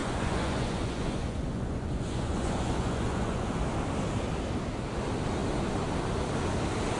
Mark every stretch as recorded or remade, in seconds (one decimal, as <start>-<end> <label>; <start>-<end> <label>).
0.0-3.6 remade; 3.6-7.0 recorded